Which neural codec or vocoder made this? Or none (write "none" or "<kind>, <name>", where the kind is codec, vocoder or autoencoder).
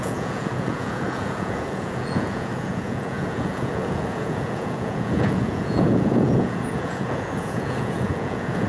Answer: vocoder, Vocos